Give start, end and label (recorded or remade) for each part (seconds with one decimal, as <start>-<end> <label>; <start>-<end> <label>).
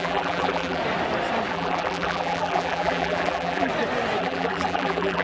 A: 0.0-0.8 remade; 0.8-1.5 recorded; 1.5-3.7 remade; 3.7-4.2 recorded; 4.2-5.2 remade